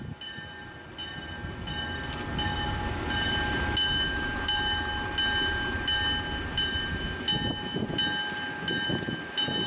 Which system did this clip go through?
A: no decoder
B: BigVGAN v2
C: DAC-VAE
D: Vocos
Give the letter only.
A